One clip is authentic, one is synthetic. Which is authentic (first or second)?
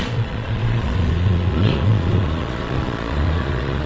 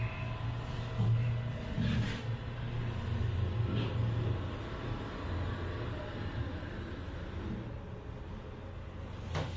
second